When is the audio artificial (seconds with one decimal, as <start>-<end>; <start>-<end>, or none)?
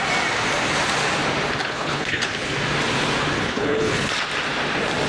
1.6-2.3; 3.4-4.1